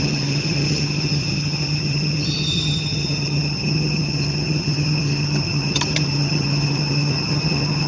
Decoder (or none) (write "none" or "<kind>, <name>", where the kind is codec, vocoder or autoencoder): vocoder, HiFi-GAN